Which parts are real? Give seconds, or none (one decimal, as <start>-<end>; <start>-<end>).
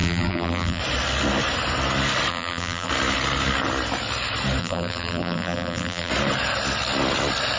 0.8-2.3; 2.9-4.6; 6.1-7.6